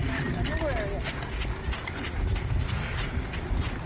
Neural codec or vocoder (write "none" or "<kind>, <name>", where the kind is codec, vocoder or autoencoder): none